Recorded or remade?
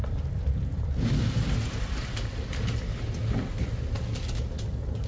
recorded